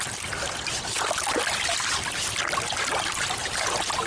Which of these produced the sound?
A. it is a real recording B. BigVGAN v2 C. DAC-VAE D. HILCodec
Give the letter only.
B